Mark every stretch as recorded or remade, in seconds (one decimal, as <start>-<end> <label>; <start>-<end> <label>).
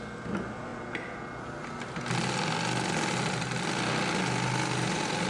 0.0-5.3 recorded